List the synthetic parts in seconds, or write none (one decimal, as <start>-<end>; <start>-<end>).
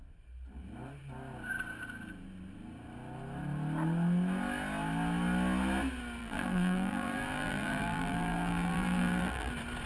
6.2-9.5